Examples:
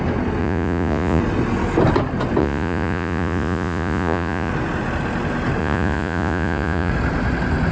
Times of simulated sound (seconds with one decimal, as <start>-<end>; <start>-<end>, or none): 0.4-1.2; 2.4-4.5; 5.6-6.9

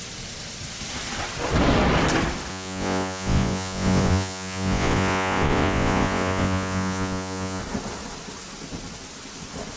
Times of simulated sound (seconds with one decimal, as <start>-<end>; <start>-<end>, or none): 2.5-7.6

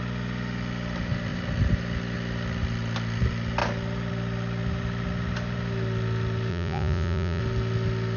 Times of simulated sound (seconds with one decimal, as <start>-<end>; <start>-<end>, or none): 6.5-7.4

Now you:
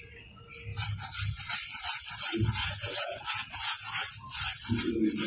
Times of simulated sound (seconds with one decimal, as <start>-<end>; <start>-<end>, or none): 2.6-3.9

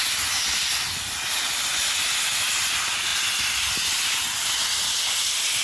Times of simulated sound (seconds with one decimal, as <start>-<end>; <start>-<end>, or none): none

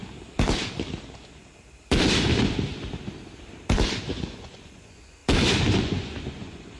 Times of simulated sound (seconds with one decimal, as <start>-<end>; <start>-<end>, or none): 4.1-5.2; 5.8-6.8

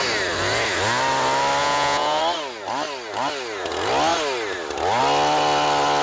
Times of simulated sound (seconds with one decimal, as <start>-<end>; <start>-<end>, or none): 1.6-2.2